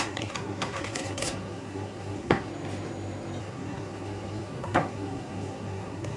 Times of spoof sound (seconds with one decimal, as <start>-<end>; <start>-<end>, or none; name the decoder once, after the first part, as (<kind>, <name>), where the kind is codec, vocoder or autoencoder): 0.0-2.5 (codec, SNAC); 3.4-6.2

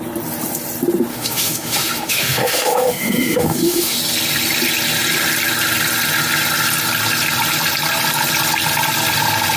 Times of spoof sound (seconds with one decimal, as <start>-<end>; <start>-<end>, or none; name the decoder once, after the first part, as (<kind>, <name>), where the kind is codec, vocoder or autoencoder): 1.1-4.0 (autoencoder, DAC-VAE)

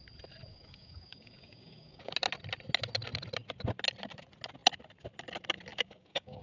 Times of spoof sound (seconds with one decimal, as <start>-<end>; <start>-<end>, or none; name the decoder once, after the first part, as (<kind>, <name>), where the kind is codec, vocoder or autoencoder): 0.5-2.1 (codec, DAC); 5.7-6.4